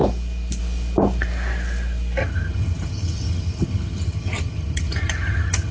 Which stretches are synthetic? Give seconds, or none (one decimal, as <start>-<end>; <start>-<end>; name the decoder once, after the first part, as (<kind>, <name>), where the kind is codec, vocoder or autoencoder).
2.2-5.7 (vocoder, HiFi-GAN)